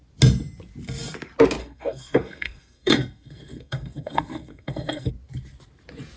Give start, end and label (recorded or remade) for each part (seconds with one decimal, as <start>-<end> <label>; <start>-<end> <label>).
0.0-1.6 recorded; 1.6-5.1 remade; 5.1-6.2 recorded